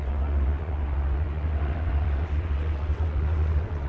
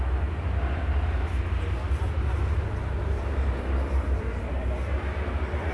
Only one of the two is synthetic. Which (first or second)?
first